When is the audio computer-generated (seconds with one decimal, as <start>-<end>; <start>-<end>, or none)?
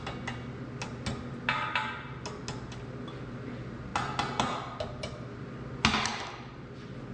none